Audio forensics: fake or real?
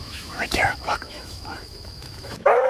fake